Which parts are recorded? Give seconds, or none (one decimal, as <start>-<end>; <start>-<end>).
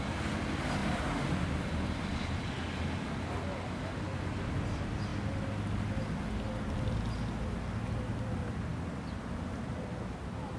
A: 0.0-0.8; 2.5-5.1; 6.0-10.6